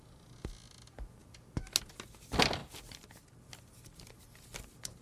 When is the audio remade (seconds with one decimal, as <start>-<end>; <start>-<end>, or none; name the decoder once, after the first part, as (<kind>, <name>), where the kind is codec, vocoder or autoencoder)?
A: none